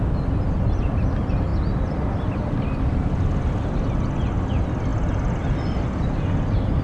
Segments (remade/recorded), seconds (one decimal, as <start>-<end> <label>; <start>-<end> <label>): 0.0-1.5 recorded; 1.5-2.0 remade; 2.0-6.8 recorded